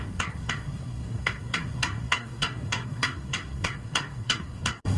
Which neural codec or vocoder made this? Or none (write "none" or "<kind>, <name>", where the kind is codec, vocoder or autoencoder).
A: codec, SNAC